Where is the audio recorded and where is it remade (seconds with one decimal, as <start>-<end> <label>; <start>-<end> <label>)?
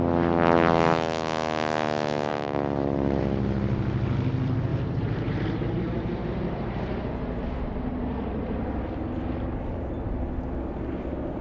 0.0-2.3 recorded; 2.3-3.2 remade; 3.2-4.7 recorded; 4.7-8.8 remade; 8.8-11.4 recorded